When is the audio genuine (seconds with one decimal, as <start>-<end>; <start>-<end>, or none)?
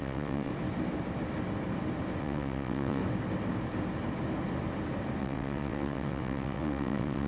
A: 0.5-2.2; 3.0-5.2